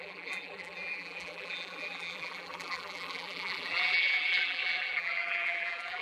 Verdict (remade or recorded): remade